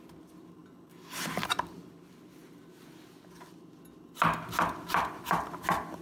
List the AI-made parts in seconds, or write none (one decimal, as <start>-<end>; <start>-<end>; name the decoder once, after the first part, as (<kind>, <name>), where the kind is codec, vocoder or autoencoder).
none